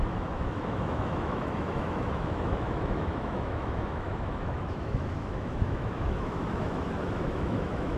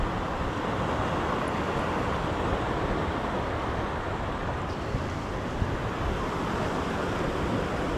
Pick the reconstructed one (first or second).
first